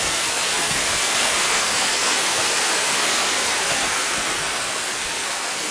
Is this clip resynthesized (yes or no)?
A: yes